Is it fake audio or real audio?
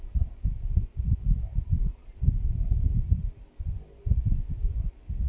real